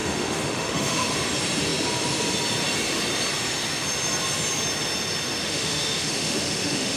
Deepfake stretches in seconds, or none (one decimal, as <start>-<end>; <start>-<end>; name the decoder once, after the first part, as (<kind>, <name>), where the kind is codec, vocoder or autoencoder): 0.0-1.1 (autoencoder, DAC-VAE); 5.4-7.0